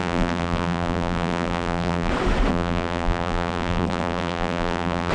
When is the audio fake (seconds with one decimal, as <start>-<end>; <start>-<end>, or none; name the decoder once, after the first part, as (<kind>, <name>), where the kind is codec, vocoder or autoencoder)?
0.0-2.1 (vocoder, BigVGAN v2); 2.5-5.1